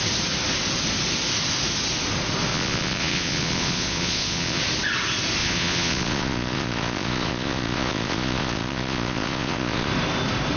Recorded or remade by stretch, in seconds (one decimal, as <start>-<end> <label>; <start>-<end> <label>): 0.0-2.5 recorded; 2.5-4.6 remade; 4.6-5.4 recorded; 5.4-9.9 remade; 9.9-10.6 recorded